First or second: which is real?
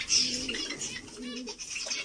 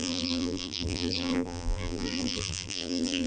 first